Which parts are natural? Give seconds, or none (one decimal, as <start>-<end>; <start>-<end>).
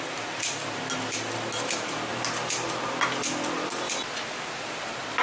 0.0-5.2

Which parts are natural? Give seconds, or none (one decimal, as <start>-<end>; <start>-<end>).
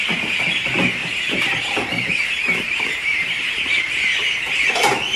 0.0-1.0; 3.8-5.2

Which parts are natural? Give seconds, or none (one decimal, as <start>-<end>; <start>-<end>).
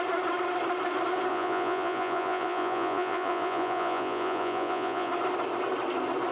0.0-1.3; 5.1-6.3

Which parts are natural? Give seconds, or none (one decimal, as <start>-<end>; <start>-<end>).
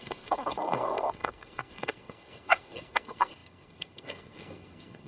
none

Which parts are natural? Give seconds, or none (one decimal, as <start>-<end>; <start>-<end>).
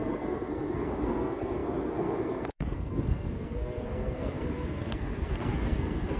none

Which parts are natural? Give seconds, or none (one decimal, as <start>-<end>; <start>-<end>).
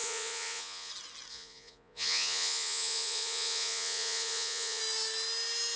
0.9-1.3; 4.8-5.8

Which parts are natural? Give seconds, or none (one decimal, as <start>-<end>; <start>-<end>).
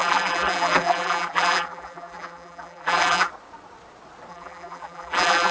3.3-4.3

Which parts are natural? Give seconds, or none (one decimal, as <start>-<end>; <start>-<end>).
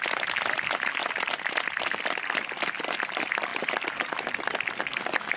0.0-1.0; 2.0-3.5; 4.8-5.4